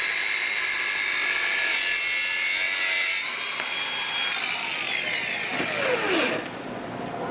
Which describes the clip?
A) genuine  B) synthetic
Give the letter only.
A